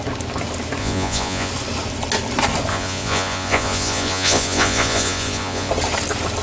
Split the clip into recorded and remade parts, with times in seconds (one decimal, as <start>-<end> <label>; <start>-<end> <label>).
0.0-0.8 recorded; 0.8-1.5 remade; 1.5-2.7 recorded; 2.7-5.7 remade; 5.7-6.4 recorded